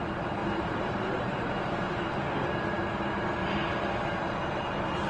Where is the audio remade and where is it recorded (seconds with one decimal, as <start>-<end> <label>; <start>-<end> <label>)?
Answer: 0.0-0.4 recorded; 0.4-1.8 remade; 1.8-3.4 recorded; 3.4-3.9 remade; 3.9-5.1 recorded